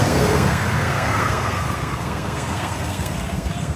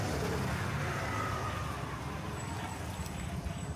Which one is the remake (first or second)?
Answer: first